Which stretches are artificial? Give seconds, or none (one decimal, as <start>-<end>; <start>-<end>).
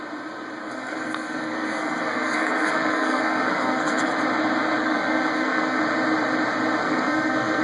0.6-4.1; 4.8-5.8; 6.8-7.6